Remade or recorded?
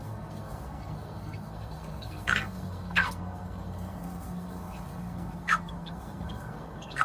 remade